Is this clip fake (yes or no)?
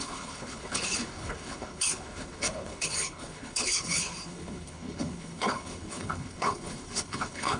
yes